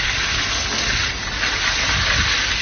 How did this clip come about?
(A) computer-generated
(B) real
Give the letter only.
B